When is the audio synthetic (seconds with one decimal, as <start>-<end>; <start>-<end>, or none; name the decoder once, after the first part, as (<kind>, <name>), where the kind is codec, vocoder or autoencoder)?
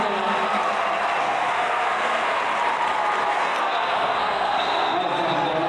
1.2-2.4 (codec, SNAC); 3.3-5.0